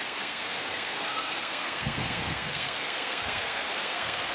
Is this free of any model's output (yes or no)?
no